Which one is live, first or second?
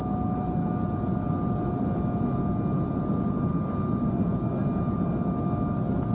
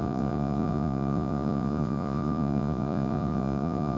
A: first